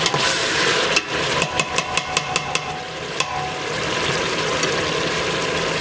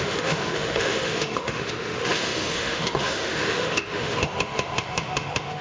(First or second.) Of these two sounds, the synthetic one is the second